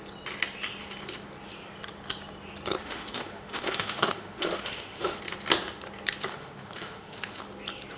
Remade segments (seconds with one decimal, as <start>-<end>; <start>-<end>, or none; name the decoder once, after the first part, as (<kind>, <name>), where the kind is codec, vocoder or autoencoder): 2.8-5.2 (autoencoder, DAC-VAE); 6.3-7.4